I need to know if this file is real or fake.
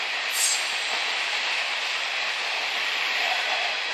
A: fake